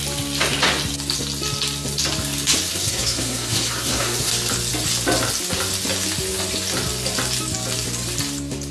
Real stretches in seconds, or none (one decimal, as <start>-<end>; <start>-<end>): 0.0-2.7; 4.3-8.7